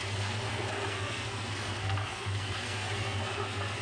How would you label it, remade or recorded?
remade